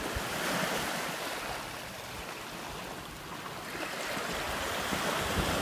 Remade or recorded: recorded